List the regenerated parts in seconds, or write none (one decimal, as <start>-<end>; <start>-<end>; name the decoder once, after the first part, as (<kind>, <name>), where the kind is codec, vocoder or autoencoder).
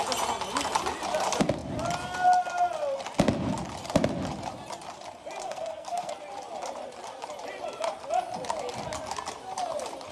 5.4-6.1 (codec, SNAC)